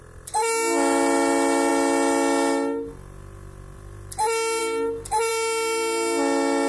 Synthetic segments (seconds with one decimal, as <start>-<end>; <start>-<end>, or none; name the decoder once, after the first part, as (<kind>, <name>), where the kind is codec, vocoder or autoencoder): none